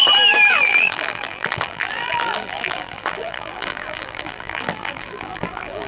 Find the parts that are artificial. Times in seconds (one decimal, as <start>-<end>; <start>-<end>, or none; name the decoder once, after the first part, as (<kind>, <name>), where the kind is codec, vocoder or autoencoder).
0.5-5.9 (vocoder, BigVGAN v2)